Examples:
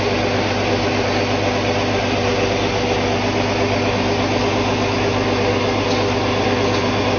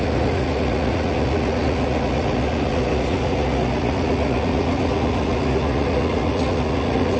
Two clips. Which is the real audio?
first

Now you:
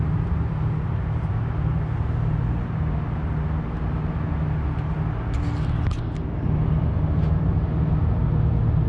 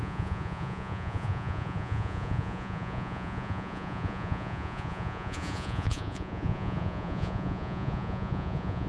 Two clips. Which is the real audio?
first